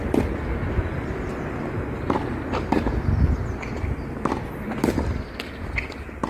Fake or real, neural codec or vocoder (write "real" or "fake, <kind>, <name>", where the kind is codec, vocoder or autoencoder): real